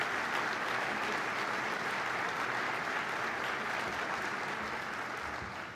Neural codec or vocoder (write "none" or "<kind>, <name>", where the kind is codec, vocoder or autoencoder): none